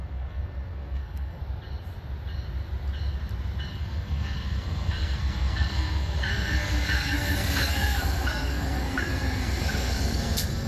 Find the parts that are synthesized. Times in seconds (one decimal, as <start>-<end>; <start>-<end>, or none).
0.0-1.4; 3.7-10.7